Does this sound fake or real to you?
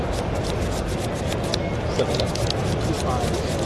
real